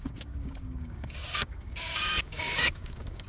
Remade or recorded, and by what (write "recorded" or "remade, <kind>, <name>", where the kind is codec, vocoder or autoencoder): remade, codec, DAC